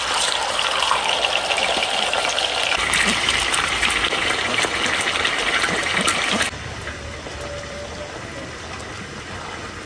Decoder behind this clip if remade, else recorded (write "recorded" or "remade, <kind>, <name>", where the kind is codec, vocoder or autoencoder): remade, vocoder, BigVGAN v2